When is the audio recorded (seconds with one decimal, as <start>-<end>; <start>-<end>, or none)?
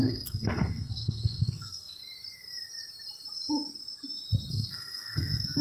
2.0-4.5